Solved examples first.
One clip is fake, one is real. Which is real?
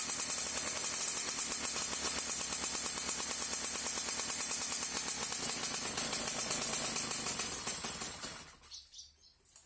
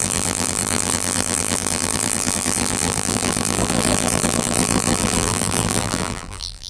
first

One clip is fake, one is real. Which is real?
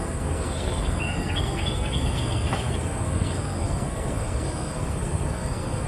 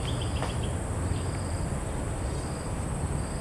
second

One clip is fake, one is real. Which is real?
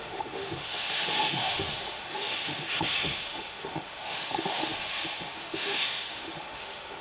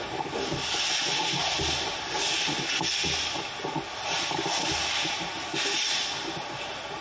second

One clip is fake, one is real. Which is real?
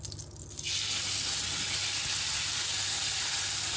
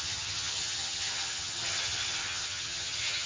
first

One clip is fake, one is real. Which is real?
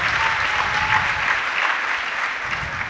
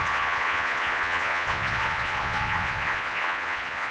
first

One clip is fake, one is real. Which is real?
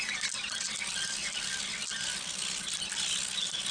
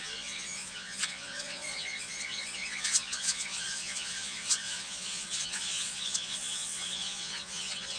first